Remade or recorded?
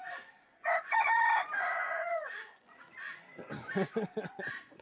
remade